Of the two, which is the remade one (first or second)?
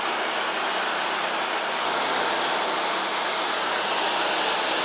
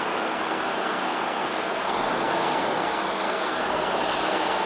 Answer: second